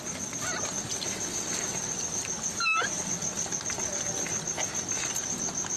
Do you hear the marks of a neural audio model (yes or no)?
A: no